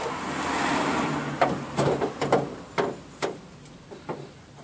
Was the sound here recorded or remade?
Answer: recorded